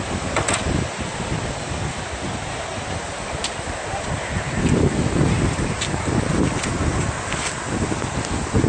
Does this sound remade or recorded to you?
recorded